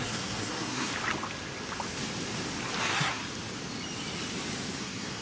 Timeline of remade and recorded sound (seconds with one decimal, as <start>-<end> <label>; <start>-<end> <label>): 0.0-0.9 remade; 0.9-2.8 recorded; 2.8-3.2 remade; 3.2-4.8 recorded; 4.8-5.2 remade